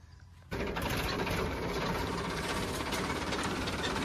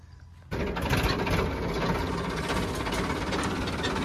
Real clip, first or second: second